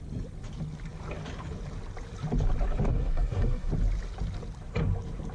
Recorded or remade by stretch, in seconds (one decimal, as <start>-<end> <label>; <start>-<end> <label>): 0.0-2.9 recorded; 2.9-3.7 remade; 3.7-5.3 recorded